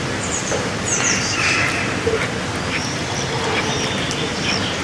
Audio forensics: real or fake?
real